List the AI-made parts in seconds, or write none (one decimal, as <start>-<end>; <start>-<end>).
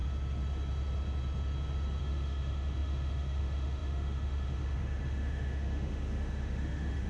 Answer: 2.0-7.1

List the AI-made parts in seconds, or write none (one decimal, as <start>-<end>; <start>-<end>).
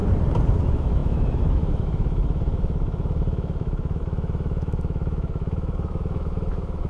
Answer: 0.6-6.9